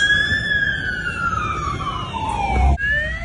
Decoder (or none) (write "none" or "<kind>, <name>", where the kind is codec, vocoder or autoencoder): none